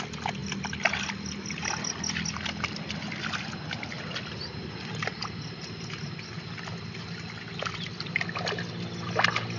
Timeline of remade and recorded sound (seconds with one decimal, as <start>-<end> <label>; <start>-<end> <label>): 0.0-9.6 recorded